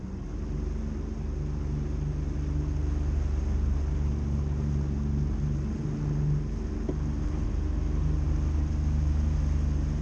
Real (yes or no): yes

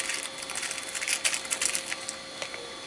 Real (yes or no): yes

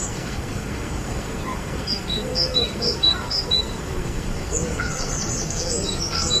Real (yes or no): no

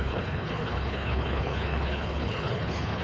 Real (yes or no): no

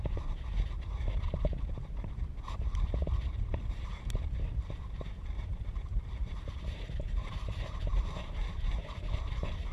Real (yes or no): no